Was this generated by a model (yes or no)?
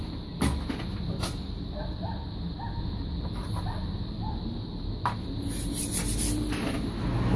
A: no